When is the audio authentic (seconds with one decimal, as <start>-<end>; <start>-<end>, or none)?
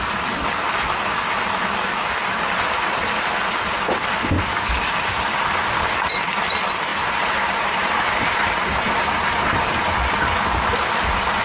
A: 0.0-6.9; 9.6-11.4